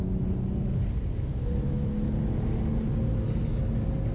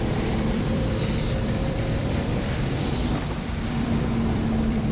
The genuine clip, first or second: first